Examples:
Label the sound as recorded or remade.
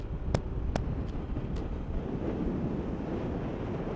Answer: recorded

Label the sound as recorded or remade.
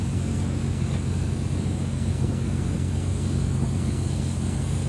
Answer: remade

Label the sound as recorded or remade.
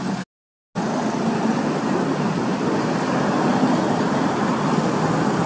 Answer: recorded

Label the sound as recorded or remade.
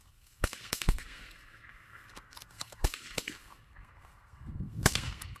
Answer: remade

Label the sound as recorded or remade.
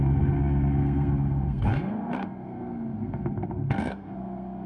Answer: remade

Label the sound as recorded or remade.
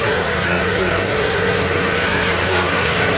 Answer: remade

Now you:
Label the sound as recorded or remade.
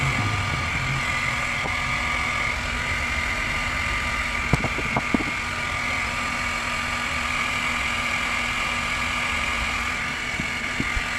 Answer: recorded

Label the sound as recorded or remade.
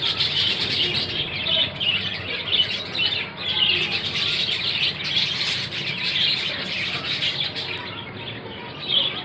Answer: recorded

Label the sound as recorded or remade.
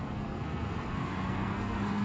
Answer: remade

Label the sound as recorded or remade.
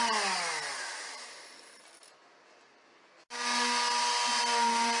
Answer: recorded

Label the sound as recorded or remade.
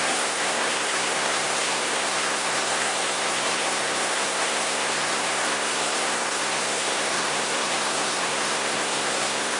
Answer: remade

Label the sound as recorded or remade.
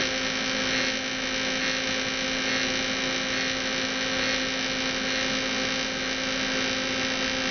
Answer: recorded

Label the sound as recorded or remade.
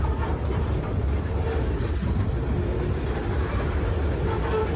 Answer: recorded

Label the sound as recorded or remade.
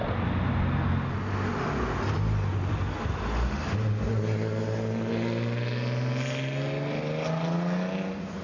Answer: recorded